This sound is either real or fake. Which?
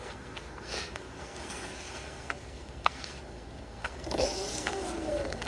fake